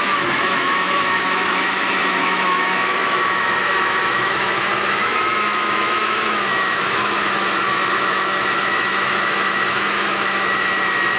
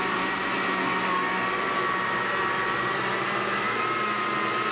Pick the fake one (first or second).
first